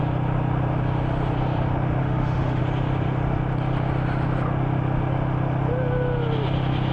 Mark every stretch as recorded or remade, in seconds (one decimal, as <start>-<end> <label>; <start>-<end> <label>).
0.0-2.0 recorded; 2.0-2.6 remade; 2.6-6.9 recorded